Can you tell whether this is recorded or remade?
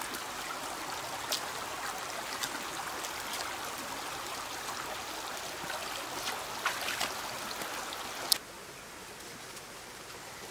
recorded